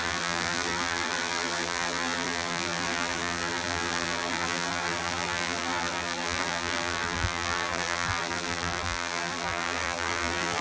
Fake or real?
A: fake